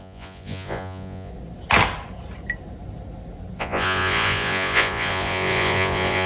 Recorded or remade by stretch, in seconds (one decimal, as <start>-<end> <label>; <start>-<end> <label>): 0.0-1.3 remade; 1.3-3.6 recorded; 3.6-6.3 remade